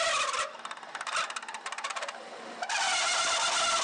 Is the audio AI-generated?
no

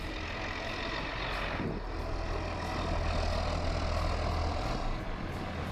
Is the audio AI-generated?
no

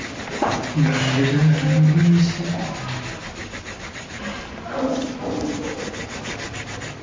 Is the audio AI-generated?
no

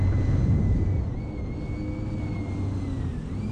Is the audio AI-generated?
no